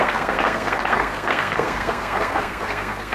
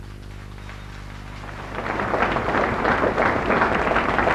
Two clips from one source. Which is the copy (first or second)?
first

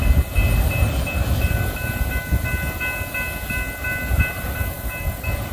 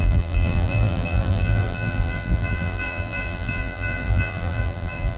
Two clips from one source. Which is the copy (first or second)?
second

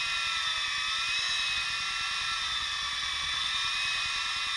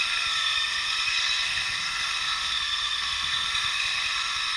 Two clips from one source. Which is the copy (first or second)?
second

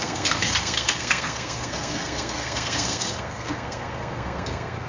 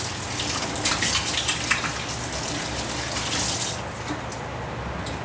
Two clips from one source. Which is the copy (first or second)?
first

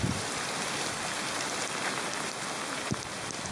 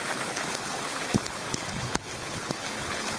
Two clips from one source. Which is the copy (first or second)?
second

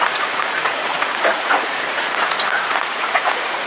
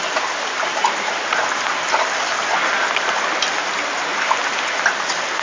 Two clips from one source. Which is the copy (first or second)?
first